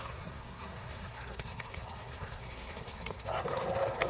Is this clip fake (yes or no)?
yes